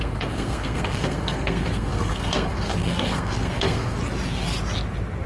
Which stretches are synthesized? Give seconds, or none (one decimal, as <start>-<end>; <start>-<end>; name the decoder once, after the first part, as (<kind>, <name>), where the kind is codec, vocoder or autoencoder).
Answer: 0.0-4.0 (codec, SNAC)

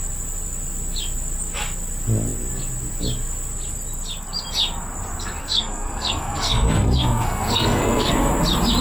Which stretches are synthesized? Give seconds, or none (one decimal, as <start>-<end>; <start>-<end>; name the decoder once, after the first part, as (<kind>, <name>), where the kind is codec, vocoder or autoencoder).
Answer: 5.4-8.3 (codec, SNAC)

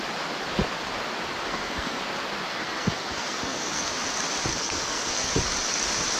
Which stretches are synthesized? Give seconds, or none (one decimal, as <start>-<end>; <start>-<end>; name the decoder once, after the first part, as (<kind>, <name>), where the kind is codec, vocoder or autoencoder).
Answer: 1.4-2.0 (codec, SNAC); 2.5-3.9; 4.5-5.3

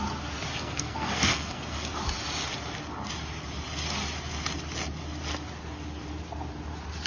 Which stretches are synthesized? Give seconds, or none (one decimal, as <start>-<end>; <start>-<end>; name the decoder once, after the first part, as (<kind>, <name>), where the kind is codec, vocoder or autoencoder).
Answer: 0.5-2.0 (codec, SNAC)